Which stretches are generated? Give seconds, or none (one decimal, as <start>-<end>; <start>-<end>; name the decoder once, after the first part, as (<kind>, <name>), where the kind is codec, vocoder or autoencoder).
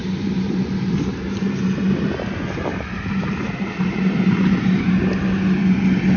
0.0-2.1 (vocoder, BigVGAN v2); 2.7-4.9